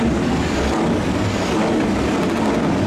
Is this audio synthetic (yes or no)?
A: no